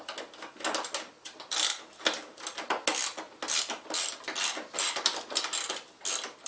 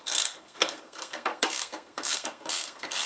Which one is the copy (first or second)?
second